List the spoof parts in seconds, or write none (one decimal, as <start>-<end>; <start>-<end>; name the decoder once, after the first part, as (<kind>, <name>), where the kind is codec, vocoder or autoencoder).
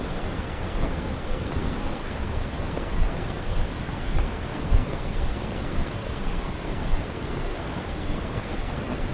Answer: 0.0-9.1 (codec, SNAC)